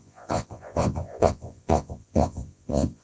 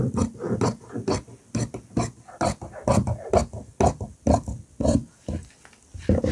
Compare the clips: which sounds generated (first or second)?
first